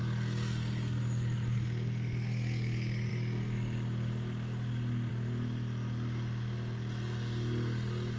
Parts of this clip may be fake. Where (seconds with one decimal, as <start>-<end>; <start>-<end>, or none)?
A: none